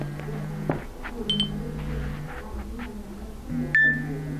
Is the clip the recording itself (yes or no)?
yes